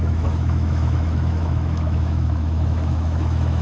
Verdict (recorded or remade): remade